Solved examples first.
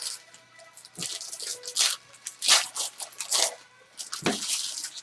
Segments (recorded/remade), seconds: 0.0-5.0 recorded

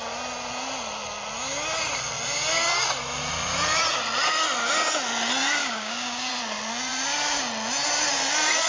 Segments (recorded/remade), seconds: 0.0-5.6 recorded; 5.6-6.3 remade; 6.3-8.7 recorded